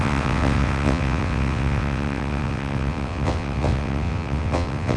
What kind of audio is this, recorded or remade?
remade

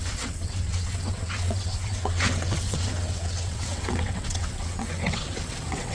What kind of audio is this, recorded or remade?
remade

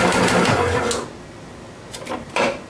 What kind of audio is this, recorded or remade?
recorded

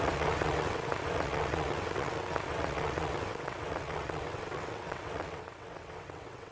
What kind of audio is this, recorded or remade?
remade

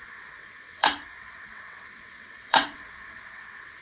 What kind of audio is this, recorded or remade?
remade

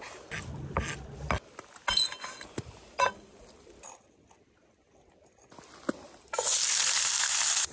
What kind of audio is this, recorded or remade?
recorded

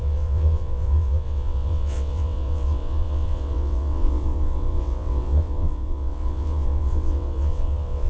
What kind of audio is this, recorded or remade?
remade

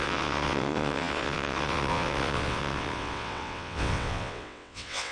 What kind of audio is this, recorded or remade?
remade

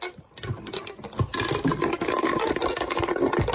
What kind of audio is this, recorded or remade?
recorded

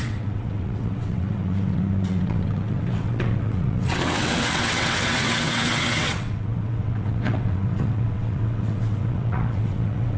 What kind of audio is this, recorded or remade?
remade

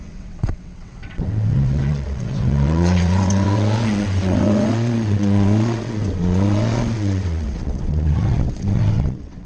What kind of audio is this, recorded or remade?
remade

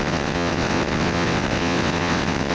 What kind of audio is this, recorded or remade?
remade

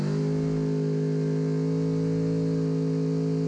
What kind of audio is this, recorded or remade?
recorded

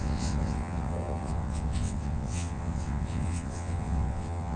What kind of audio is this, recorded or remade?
remade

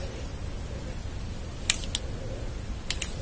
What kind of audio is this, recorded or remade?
recorded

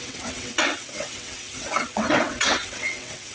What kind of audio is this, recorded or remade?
remade